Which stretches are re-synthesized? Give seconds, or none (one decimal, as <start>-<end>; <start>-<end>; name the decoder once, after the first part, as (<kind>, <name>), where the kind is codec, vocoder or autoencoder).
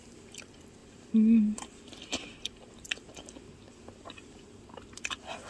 none